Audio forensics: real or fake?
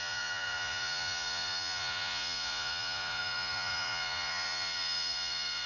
fake